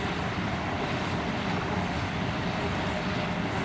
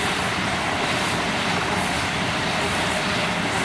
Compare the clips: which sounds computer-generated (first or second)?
second